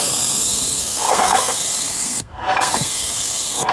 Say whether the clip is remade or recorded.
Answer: remade